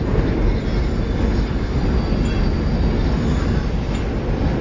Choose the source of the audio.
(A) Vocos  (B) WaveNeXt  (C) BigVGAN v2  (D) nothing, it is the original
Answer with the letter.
D